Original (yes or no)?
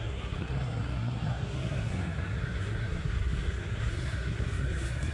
no